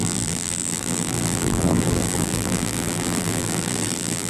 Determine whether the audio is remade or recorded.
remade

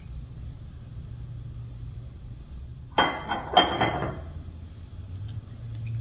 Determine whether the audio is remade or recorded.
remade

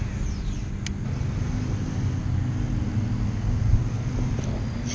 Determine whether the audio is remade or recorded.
recorded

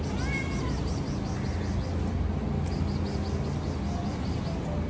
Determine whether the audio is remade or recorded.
recorded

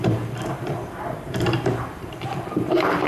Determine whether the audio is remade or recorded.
remade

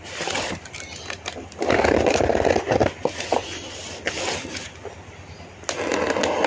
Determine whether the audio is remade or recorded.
recorded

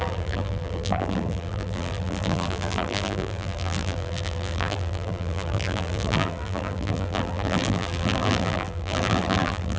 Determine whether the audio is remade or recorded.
remade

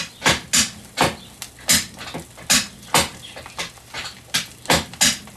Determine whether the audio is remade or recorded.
recorded